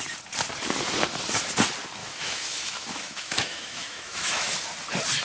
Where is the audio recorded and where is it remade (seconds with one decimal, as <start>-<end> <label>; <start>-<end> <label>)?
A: 0.0-2.0 recorded; 2.0-4.5 remade; 4.5-5.2 recorded